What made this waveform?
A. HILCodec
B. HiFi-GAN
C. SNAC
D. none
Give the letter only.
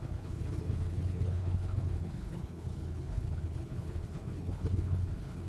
A